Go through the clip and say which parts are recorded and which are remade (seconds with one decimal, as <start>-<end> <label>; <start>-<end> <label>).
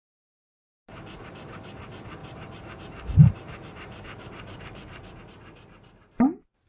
0.0-2.2 recorded; 2.2-5.2 remade; 5.2-6.7 recorded